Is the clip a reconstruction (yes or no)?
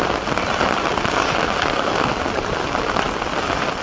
no